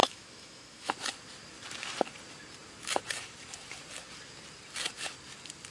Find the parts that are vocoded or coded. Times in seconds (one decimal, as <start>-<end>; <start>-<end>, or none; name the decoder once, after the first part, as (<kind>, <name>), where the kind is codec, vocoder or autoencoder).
0.0-0.9 (autoencoder, DAC-VAE)